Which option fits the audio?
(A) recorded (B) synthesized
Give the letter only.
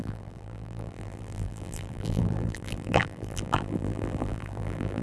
B